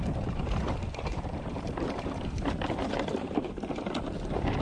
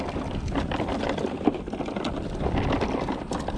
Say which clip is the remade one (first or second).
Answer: first